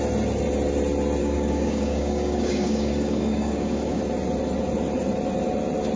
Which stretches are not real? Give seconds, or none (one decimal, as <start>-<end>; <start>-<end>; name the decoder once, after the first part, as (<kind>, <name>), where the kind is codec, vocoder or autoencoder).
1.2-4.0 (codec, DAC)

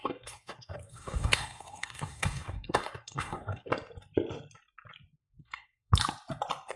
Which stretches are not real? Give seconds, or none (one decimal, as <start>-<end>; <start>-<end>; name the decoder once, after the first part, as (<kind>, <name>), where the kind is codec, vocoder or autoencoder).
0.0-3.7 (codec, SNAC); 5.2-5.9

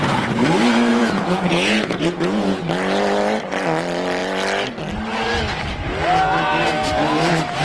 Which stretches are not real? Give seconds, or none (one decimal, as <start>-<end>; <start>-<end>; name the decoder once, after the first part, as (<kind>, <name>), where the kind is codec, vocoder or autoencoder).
0.9-2.6 (vocoder, Vocos)

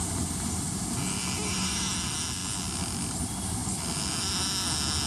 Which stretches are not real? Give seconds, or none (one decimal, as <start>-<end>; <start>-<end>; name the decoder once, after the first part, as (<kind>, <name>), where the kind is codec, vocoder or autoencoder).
none